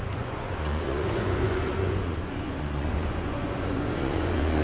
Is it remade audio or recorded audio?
remade